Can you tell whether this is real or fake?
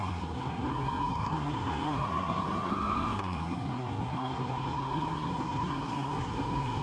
fake